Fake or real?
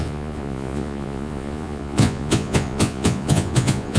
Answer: fake